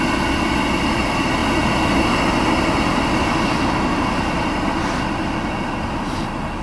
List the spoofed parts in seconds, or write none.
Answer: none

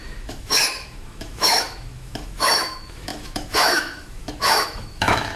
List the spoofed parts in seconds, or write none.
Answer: 0.0-5.4 (autoencoder, DAC-VAE)